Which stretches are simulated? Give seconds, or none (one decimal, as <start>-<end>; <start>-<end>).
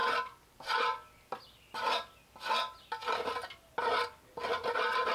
none